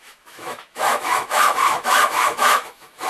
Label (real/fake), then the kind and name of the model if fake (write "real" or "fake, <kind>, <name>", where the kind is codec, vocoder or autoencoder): fake, autoencoder, DAC-VAE